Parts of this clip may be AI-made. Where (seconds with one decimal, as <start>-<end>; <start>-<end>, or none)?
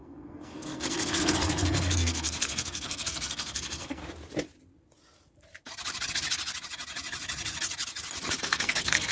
0.0-4.0; 8.4-9.1